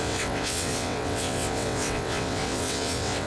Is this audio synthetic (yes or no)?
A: yes